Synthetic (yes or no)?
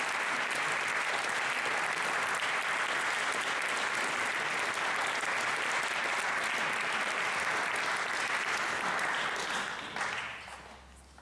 no